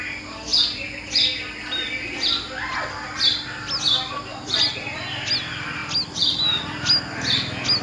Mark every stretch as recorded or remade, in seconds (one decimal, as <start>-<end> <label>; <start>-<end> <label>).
0.0-7.8 recorded